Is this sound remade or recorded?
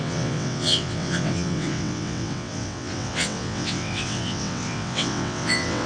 remade